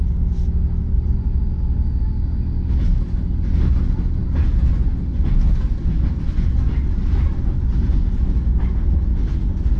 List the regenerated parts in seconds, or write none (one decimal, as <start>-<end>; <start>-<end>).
none